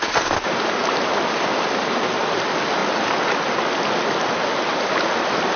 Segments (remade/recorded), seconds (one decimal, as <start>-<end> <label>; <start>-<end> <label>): 0.0-0.8 recorded; 0.8-1.8 remade; 1.8-5.6 recorded